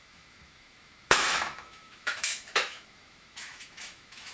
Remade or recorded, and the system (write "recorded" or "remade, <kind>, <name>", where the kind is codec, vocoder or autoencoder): remade, autoencoder, DAC-VAE